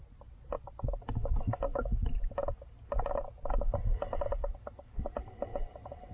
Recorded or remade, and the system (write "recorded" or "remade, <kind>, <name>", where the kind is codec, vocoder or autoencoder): recorded